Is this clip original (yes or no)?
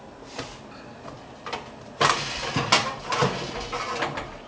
yes